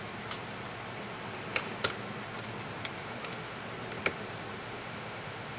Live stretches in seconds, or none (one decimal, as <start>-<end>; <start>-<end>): 0.0-3.0; 3.6-4.6